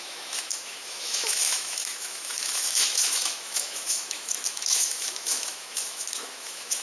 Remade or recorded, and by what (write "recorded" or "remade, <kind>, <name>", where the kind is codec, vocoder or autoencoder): remade, autoencoder, DAC-VAE